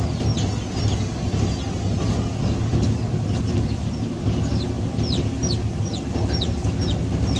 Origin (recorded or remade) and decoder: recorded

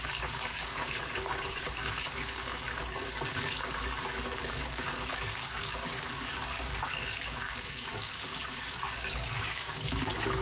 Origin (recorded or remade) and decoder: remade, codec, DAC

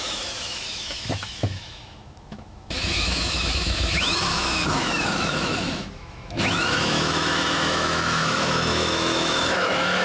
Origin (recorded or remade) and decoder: remade, autoencoder, DAC-VAE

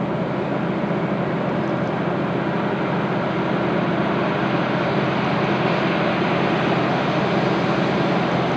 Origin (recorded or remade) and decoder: recorded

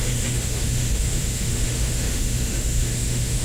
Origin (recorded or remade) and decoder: remade, autoencoder, DAC-VAE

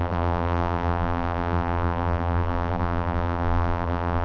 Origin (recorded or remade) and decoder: remade, vocoder, BigVGAN v2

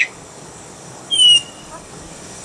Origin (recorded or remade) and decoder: remade, codec, DAC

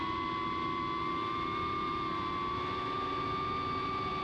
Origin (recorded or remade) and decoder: recorded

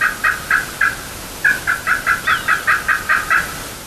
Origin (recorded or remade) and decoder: recorded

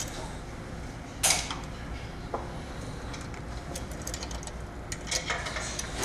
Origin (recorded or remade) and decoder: recorded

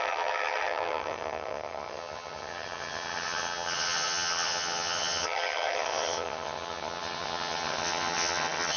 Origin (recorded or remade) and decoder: remade, vocoder, HiFi-GAN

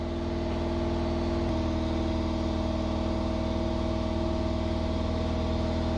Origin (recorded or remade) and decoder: recorded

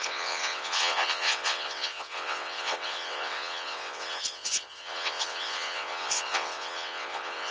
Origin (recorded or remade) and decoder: remade, vocoder, WaveNeXt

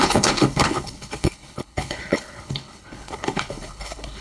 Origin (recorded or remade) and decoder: remade, codec, HILCodec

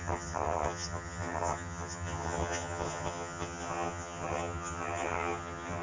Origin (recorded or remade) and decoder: remade, vocoder, HiFi-GAN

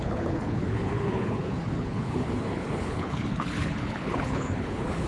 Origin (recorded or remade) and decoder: remade, codec, HILCodec